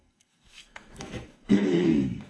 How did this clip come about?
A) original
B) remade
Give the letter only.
B